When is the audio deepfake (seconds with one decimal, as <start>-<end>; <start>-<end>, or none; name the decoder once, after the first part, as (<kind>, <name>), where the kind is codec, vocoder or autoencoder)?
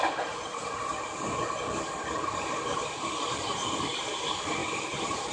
0.0-0.5 (vocoder, BigVGAN v2); 3.7-5.3